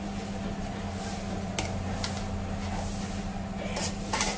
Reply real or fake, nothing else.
real